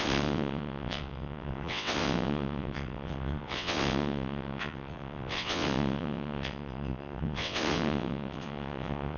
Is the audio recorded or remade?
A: remade